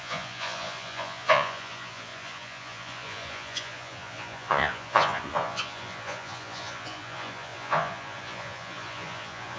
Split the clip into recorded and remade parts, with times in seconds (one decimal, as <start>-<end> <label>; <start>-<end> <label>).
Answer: 0.0-9.6 remade